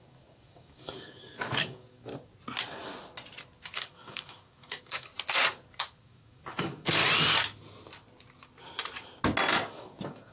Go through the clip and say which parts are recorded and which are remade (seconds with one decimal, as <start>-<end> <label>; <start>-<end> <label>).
0.0-2.1 remade; 2.1-3.6 recorded; 3.6-5.1 remade; 5.1-6.0 recorded; 6.0-7.0 remade; 7.0-9.6 recorded; 9.6-10.3 remade